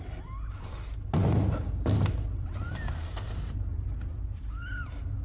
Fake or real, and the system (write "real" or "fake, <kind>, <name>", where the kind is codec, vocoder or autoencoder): real